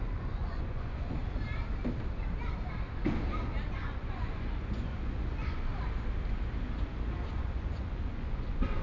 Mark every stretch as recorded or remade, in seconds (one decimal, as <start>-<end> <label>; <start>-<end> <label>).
0.0-1.2 remade; 1.2-3.8 recorded; 3.8-5.7 remade; 5.7-7.4 recorded; 7.4-8.8 remade